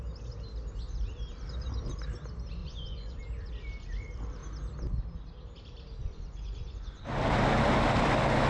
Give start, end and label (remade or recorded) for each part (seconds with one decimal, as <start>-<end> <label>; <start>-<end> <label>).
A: 0.0-2.6 recorded; 2.6-3.2 remade; 3.2-6.0 recorded; 6.0-7.0 remade; 7.0-8.5 recorded